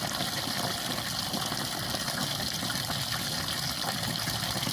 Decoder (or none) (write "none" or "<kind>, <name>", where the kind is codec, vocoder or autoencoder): none